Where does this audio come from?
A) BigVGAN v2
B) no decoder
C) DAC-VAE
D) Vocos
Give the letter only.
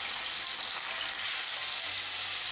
B